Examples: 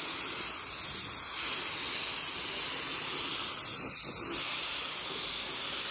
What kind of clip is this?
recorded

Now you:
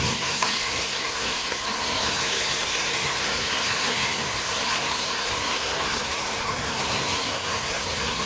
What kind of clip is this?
remade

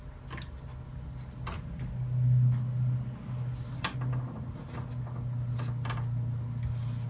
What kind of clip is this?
recorded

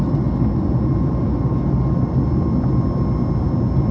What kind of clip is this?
recorded